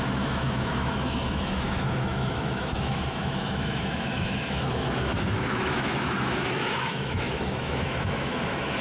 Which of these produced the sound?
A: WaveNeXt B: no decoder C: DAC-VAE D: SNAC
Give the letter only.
C